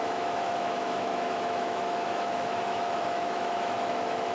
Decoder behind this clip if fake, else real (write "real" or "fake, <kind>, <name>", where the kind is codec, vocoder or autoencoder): fake, autoencoder, DAC-VAE